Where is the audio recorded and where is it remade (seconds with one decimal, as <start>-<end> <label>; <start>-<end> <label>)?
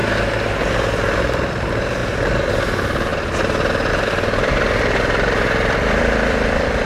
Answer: 0.0-1.2 recorded; 1.2-3.1 remade; 3.1-3.9 recorded; 3.9-6.9 remade